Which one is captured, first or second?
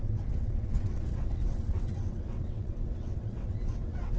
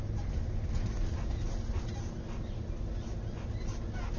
second